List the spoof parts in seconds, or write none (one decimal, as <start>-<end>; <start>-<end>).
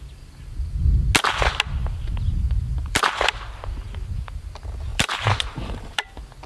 1.8-3.0; 4.9-6.1